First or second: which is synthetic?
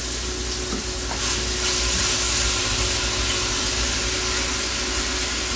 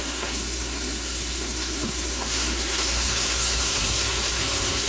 second